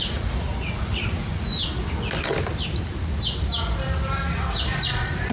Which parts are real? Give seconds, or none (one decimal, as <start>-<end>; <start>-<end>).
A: 1.6-4.8